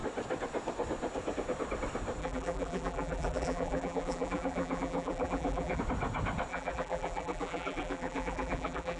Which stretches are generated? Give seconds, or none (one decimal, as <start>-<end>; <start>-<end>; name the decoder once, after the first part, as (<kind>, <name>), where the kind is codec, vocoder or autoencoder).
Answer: 2.2-5.8 (vocoder, BigVGAN v2); 6.5-9.0